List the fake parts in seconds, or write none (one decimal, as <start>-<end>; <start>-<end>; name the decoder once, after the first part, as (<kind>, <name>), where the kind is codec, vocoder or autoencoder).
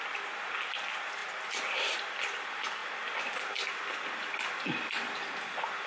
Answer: none